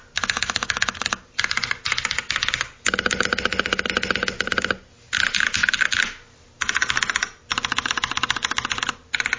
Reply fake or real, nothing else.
real